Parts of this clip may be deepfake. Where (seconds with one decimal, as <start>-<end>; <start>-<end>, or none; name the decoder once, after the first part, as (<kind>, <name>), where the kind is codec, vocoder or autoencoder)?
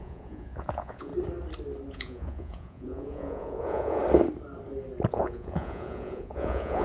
0.0-1.1 (vocoder, Vocos); 1.9-4.0; 5.1-6.8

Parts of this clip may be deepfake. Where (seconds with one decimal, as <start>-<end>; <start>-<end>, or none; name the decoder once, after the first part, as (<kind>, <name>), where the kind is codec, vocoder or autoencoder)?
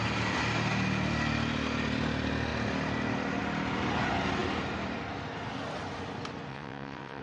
6.5-7.2 (vocoder, WaveNeXt)